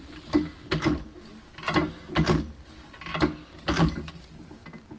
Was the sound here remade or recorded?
recorded